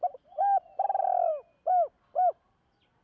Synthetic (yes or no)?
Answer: no